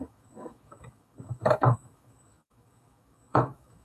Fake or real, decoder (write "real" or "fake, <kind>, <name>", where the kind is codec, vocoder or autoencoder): fake, autoencoder, DAC-VAE